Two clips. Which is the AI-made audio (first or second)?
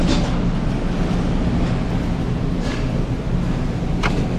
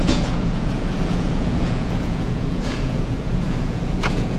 second